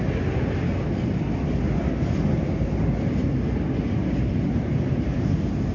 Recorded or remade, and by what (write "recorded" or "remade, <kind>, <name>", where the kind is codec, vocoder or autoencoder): recorded